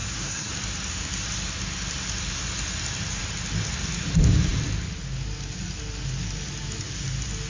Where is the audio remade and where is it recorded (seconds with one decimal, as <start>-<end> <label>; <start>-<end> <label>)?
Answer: 0.0-0.5 remade; 0.5-7.5 recorded